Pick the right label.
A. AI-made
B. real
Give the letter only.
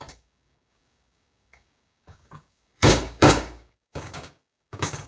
A